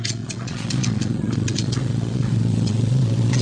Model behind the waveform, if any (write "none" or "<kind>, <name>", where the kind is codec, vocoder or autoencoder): vocoder, Vocos